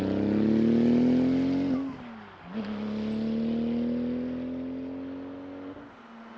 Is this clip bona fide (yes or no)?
yes